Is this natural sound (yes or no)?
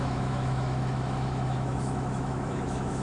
no